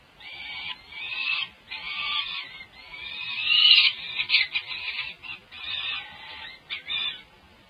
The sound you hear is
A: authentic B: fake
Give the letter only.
A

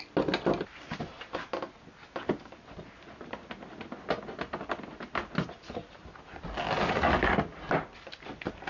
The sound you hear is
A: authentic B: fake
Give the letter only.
A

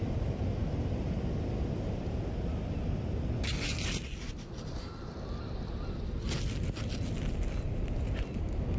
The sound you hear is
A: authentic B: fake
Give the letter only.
A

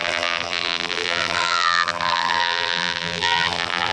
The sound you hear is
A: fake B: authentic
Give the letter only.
A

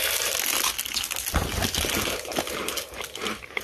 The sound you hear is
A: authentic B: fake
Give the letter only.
A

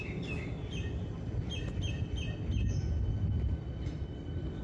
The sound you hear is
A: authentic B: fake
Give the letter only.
A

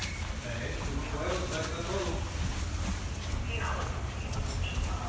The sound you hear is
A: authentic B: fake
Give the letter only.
A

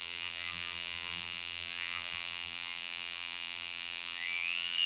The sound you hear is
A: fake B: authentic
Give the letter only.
A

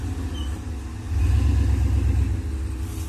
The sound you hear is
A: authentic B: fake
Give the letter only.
A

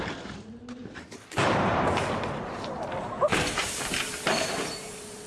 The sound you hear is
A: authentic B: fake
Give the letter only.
B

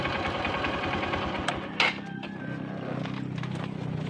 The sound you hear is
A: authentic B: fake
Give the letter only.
A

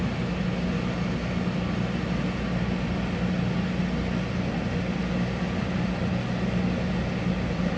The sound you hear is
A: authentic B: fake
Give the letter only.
A